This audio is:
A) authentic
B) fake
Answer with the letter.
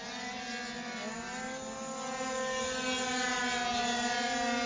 A